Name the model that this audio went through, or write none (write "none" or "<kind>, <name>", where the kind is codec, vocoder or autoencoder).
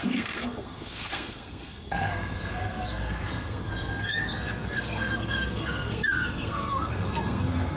codec, SNAC